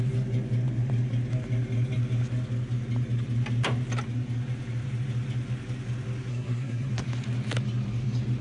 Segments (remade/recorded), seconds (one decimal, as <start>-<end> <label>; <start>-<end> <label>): 0.0-6.3 recorded; 6.3-6.9 remade; 6.9-8.4 recorded